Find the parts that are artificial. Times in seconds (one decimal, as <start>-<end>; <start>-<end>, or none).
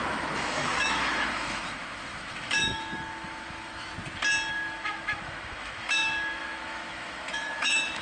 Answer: 0.0-3.9; 4.5-8.0